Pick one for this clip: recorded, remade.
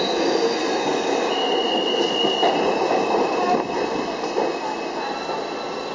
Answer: recorded